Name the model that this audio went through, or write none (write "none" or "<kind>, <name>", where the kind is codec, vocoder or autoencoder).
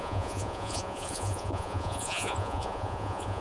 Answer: vocoder, Vocos